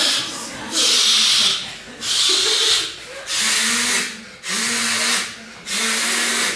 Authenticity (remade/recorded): recorded